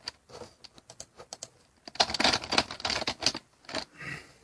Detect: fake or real real